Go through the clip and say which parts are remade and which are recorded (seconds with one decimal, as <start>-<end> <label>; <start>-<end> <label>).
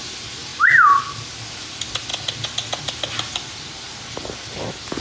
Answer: 0.0-5.0 recorded